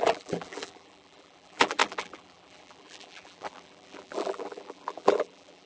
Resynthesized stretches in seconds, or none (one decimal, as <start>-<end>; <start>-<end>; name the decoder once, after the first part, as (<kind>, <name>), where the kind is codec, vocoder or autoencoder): 0.0-5.7 (vocoder, BigVGAN v2)